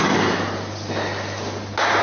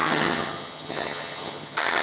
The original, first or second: first